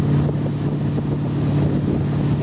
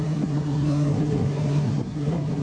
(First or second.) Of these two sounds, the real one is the first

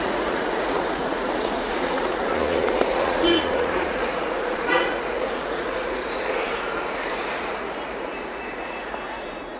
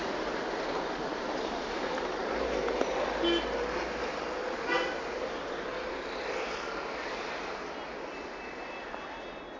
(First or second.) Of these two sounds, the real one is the second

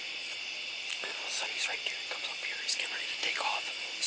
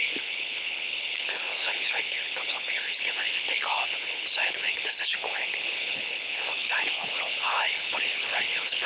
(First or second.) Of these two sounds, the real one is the first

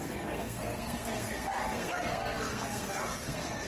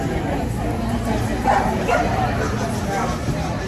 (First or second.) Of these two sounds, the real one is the second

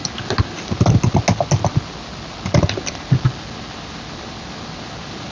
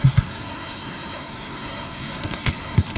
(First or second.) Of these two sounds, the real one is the first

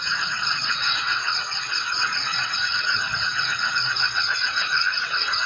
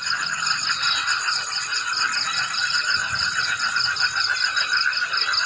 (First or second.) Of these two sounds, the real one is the second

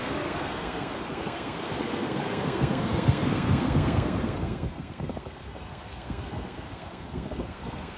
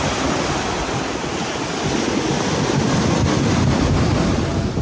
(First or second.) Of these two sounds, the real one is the second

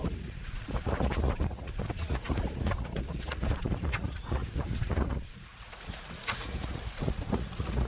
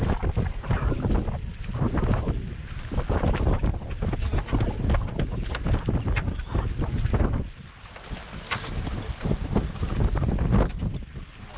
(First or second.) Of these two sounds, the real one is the second